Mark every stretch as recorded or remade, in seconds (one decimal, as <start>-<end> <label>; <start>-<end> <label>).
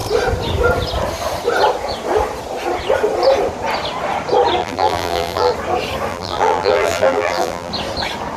0.0-4.6 recorded; 4.6-5.5 remade; 5.5-6.1 recorded; 6.1-7.7 remade; 7.7-8.4 recorded